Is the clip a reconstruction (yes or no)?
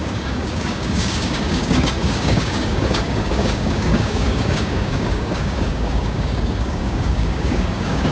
yes